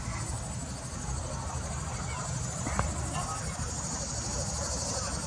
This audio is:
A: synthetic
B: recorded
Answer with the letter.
B